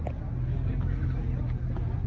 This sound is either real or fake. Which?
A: real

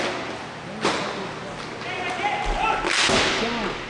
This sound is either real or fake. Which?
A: real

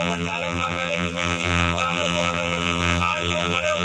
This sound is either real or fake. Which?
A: fake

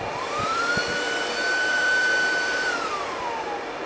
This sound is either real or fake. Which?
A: fake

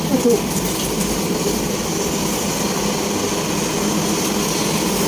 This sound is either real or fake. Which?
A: real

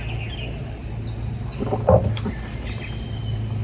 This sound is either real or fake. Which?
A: real